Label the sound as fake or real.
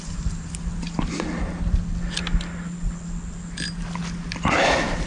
real